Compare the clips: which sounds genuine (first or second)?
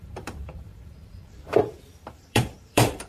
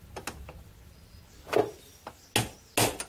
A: second